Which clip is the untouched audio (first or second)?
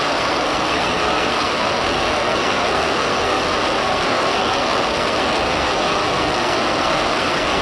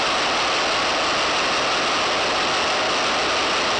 second